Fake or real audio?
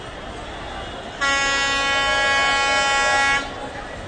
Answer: real